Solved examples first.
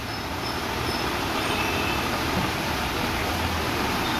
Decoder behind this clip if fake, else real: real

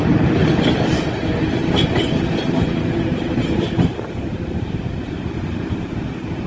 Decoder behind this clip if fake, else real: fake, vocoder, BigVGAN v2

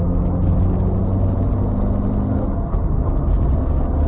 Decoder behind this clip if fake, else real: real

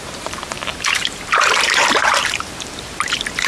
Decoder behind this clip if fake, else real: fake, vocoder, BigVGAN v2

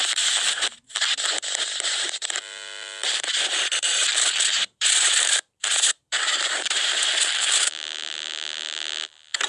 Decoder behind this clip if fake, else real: fake, vocoder, BigVGAN v2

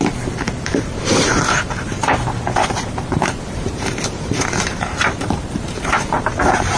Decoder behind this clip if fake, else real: fake, vocoder, BigVGAN v2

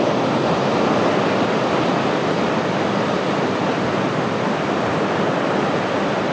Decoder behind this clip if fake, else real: real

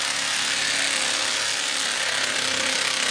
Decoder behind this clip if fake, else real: real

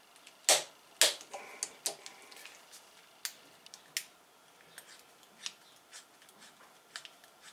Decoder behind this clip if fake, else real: real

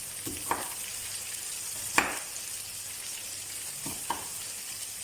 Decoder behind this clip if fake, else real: fake, vocoder, BigVGAN v2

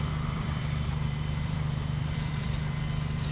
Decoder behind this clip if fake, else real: fake, vocoder, BigVGAN v2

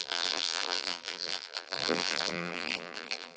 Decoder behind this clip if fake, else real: fake, vocoder, BigVGAN v2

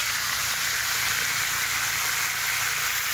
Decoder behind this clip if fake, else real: real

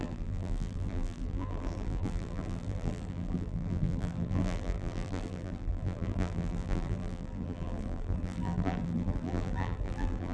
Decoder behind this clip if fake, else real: fake, vocoder, BigVGAN v2